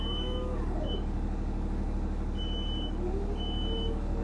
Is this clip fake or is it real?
fake